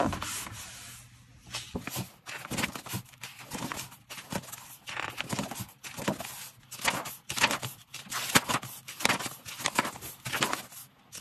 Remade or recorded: recorded